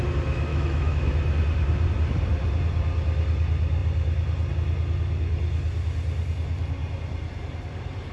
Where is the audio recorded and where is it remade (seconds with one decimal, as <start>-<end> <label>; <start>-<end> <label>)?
0.0-0.5 recorded; 0.5-1.1 remade; 1.1-8.1 recorded